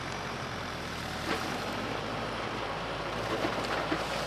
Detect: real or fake fake